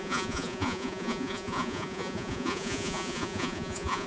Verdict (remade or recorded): remade